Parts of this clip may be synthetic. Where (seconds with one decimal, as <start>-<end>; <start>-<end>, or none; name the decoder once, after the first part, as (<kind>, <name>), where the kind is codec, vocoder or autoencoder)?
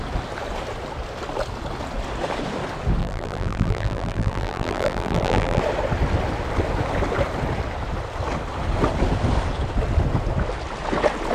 3.0-5.6 (vocoder, BigVGAN v2)